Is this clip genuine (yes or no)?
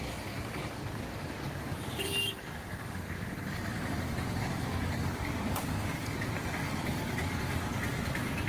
no